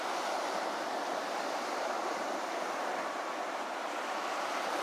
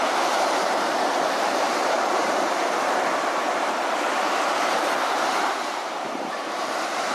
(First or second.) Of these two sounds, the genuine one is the first